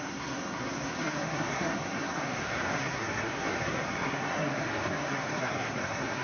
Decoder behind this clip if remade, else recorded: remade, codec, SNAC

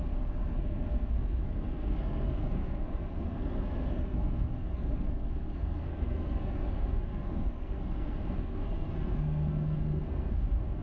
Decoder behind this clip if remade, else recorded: remade, codec, SNAC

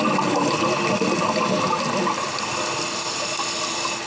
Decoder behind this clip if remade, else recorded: recorded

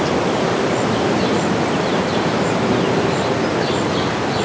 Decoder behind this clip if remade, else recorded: recorded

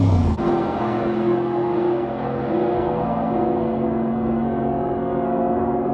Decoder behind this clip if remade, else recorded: remade, codec, SNAC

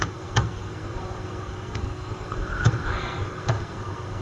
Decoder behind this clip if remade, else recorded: remade, codec, SNAC